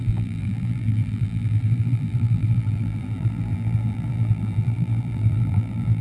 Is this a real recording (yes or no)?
no